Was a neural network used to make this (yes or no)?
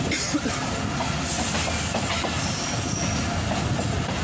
no